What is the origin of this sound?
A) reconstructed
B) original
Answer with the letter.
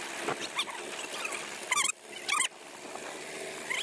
B